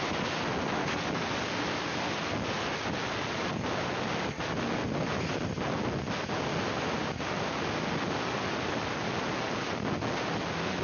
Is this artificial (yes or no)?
no